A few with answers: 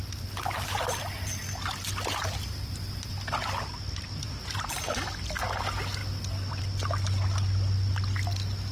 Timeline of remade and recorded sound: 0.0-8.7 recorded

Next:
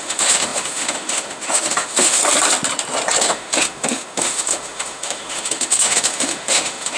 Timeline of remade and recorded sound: 0.0-2.2 remade; 2.2-3.2 recorded; 3.2-7.0 remade